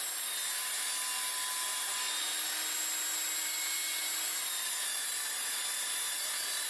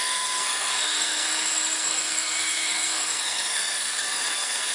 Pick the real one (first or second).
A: first